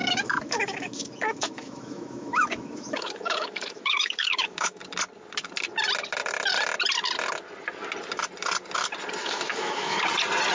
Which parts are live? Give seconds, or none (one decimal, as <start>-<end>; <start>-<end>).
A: 4.8-9.2; 10.0-10.5

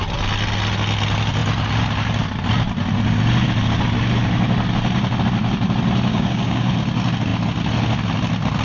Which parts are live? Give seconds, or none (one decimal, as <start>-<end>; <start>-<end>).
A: 0.0-6.1; 6.7-8.6